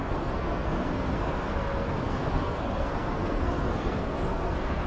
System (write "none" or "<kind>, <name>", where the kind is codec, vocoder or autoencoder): codec, SNAC